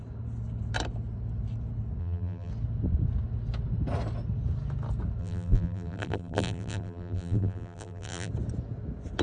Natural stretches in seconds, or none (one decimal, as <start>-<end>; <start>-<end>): 0.0-2.0; 2.5-5.2; 8.3-9.2